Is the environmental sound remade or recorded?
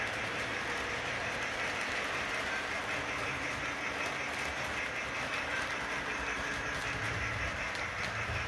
recorded